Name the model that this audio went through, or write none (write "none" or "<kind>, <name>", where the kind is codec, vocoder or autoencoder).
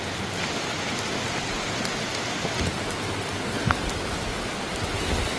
none